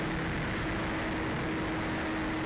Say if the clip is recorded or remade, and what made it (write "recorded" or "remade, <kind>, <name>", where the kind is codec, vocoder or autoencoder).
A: recorded